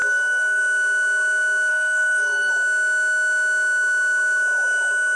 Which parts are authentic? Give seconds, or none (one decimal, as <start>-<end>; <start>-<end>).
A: 0.6-1.7; 2.5-5.2